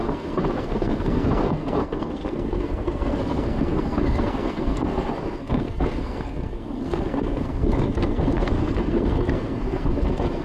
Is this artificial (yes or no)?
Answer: yes